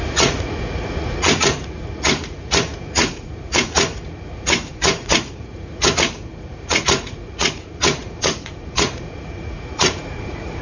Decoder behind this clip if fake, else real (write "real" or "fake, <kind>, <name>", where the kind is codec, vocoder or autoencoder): fake, vocoder, Vocos